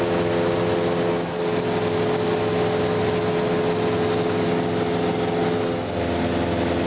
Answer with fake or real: real